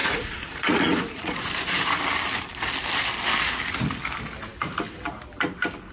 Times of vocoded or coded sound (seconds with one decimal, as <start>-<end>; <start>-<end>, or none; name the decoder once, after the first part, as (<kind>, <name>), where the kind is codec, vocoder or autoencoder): 0.0-2.0 (vocoder, Vocos)